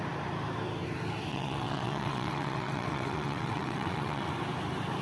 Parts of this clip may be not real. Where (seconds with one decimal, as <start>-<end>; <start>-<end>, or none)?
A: 1.3-4.3

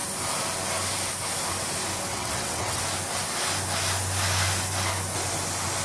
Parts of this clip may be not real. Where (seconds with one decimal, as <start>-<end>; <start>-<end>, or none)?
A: 2.1-2.8

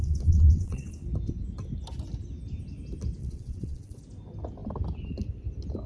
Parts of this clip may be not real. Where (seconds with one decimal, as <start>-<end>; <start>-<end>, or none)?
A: 0.0-0.9; 3.2-4.0

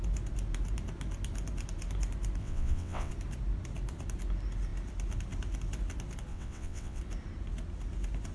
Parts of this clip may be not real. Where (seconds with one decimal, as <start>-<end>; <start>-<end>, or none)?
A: 2.4-3.1; 6.3-7.0

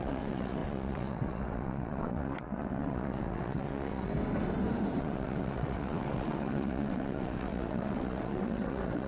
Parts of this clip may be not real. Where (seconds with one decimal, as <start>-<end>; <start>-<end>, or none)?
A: 0.0-4.1; 5.0-9.1

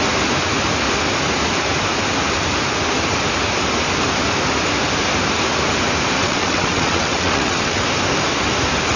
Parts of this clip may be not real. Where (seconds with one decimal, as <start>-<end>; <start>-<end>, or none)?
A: 6.2-7.8